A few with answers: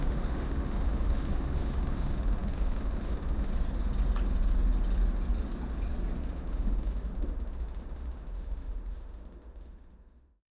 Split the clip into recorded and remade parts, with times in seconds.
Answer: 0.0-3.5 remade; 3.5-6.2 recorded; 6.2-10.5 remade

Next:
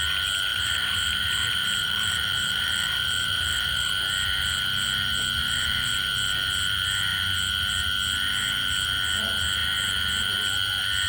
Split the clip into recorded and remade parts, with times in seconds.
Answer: 0.0-0.5 recorded; 0.5-3.9 remade; 3.9-5.4 recorded; 5.4-5.9 remade; 5.9-11.1 recorded

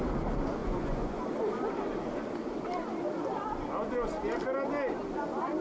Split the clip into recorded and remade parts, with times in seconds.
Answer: 0.0-0.6 recorded; 0.6-1.2 remade; 1.2-5.6 recorded

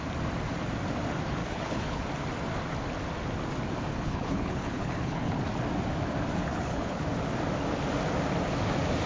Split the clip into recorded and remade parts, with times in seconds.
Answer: 0.0-1.4 recorded; 1.4-2.0 remade; 2.0-3.9 recorded; 3.9-5.4 remade; 5.4-6.5 recorded; 6.5-7.0 remade; 7.0-9.1 recorded

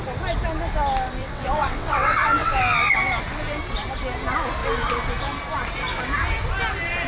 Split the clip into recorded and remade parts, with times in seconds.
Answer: 0.0-1.2 recorded; 1.2-2.6 remade; 2.6-7.1 recorded

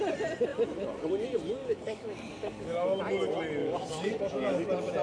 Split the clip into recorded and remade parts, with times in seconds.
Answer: 0.0-1.6 recorded; 1.6-3.0 remade; 3.0-3.6 recorded; 3.6-4.2 remade; 4.2-5.0 recorded

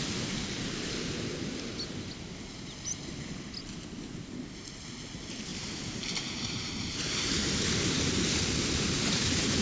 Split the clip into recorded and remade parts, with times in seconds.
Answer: 0.0-5.5 recorded; 5.5-9.6 remade